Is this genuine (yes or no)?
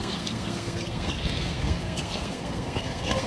no